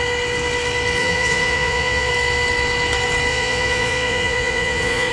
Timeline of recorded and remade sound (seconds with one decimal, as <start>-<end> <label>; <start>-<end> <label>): 0.0-1.0 recorded; 1.0-2.1 remade; 2.1-3.3 recorded; 3.3-5.1 remade